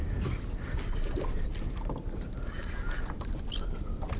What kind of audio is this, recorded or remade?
recorded